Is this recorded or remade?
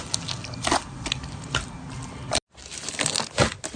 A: recorded